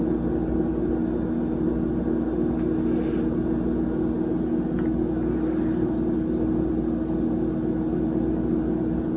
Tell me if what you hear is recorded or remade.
recorded